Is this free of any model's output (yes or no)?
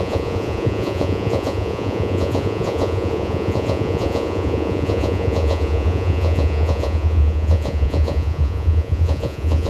no